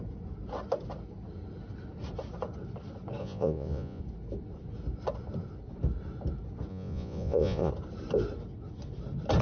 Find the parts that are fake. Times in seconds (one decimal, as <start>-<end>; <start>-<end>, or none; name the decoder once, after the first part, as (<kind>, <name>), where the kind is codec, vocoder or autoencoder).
3.2-4.0 (vocoder, Vocos); 6.7-7.7